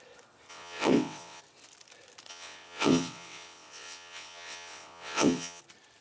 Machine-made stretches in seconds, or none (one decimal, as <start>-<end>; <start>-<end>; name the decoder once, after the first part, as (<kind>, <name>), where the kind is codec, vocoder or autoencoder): 0.5-1.4 (vocoder, WaveNeXt); 2.3-5.6